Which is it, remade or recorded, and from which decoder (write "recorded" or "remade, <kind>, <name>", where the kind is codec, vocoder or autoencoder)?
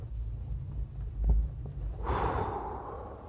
recorded